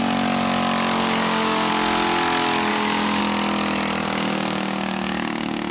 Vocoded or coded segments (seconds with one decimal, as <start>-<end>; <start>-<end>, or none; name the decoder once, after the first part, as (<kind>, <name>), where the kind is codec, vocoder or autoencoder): 1.0-1.7 (codec, DAC); 2.7-3.2; 4.0-5.7